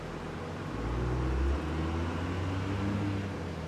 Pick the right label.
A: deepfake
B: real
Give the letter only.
B